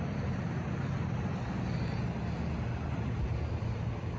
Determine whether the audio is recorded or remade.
recorded